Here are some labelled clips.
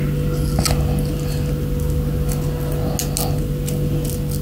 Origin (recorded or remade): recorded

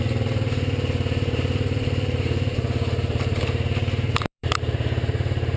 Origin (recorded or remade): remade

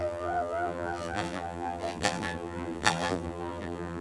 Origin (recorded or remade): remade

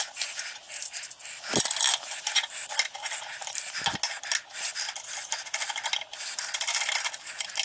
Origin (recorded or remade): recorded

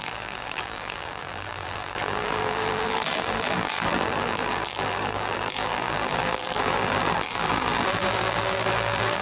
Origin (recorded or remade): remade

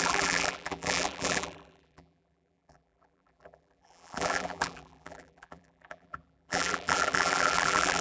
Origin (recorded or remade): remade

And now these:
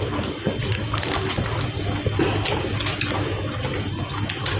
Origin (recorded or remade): recorded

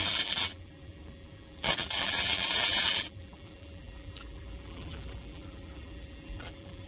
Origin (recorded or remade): remade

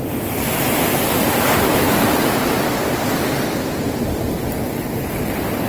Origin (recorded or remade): remade